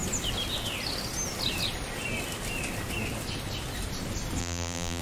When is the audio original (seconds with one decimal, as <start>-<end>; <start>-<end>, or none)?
0.0-4.4